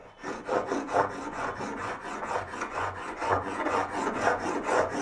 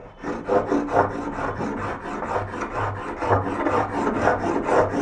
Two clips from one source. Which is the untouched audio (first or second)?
second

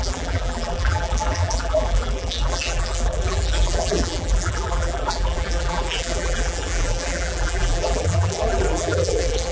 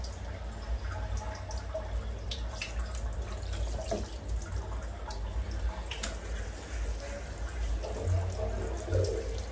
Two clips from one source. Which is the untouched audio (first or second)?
second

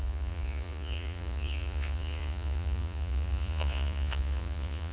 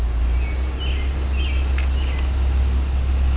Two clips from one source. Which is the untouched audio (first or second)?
second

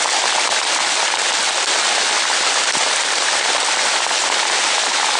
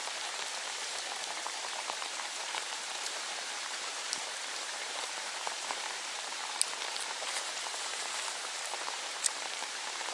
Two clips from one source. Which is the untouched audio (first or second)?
first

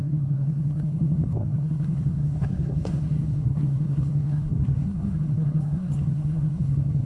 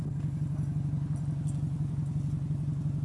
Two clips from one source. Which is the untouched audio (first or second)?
second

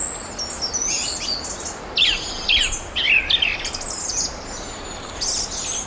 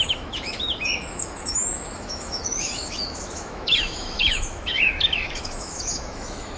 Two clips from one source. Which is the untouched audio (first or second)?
first